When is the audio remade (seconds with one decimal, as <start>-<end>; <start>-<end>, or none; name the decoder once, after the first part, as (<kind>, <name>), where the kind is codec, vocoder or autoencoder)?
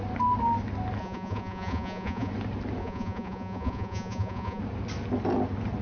1.0-2.3 (vocoder, Vocos); 2.8-4.6